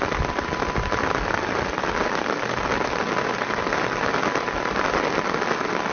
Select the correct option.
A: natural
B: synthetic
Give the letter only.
A